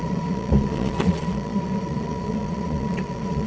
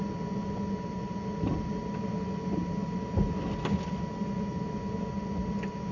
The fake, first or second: first